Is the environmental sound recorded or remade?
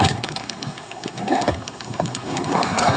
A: remade